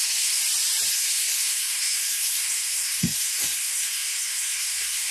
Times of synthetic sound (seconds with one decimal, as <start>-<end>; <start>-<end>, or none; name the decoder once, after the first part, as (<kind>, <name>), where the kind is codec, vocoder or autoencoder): 0.0-0.4 (codec, SNAC); 0.9-5.1